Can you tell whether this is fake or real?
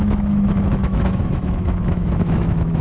fake